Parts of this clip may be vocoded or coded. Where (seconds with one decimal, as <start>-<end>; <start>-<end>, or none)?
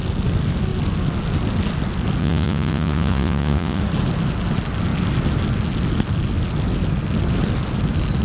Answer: 2.2-3.8